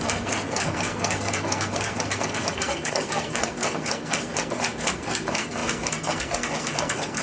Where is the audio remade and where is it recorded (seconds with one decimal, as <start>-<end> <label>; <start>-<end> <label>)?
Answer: 0.0-7.2 remade